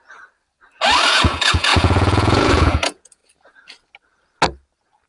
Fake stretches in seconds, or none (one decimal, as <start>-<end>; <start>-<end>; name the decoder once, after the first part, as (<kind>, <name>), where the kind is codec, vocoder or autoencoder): 1.1-3.2 (vocoder, Vocos)